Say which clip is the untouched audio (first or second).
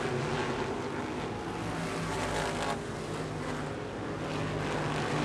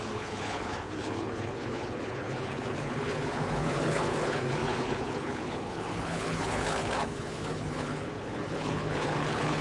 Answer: first